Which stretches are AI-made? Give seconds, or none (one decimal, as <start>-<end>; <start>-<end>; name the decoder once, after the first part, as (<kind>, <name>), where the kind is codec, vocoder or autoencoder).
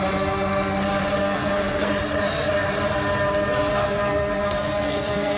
1.2-1.9 (codec, SNAC); 3.7-5.4